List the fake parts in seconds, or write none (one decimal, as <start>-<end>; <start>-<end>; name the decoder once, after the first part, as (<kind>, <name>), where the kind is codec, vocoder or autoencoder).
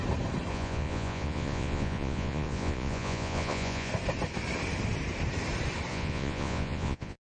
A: 0.5-3.9 (vocoder, Vocos); 5.9-7.2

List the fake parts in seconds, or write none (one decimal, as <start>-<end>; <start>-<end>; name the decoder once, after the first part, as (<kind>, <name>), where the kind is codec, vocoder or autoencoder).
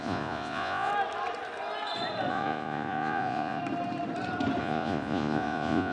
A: 0.0-0.9 (vocoder, Vocos); 2.3-3.6; 4.6-5.9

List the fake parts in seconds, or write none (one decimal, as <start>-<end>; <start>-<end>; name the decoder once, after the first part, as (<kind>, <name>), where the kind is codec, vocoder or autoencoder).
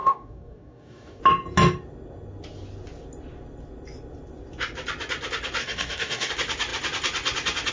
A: 0.0-1.2 (codec, DAC); 5.6-6.3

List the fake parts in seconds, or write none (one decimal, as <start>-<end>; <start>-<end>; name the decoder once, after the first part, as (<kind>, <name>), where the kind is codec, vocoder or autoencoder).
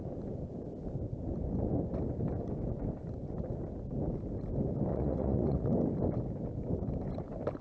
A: 4.9-5.7 (vocoder, Vocos)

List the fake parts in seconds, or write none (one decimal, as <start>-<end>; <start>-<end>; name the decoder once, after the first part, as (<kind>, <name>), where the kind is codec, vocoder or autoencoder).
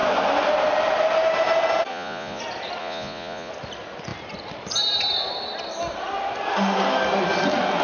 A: 1.9-2.4 (vocoder, Vocos); 2.8-3.5